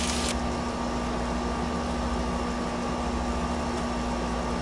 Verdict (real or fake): real